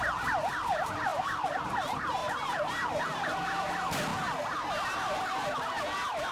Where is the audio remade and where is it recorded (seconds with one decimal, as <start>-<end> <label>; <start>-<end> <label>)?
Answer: 0.0-1.1 recorded; 1.1-1.7 remade; 1.7-2.2 recorded; 2.2-3.0 remade; 3.0-6.3 recorded